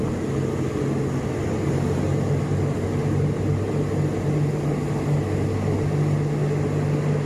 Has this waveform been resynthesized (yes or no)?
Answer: no